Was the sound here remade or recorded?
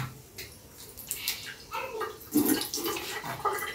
recorded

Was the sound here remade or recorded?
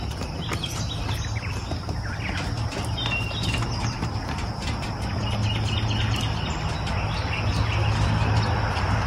recorded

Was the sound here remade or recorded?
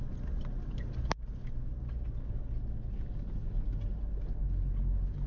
recorded